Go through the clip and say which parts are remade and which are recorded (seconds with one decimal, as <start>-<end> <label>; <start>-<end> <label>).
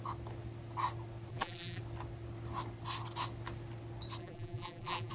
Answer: 0.0-1.3 recorded; 1.3-1.8 remade; 1.8-4.2 recorded; 4.2-5.1 remade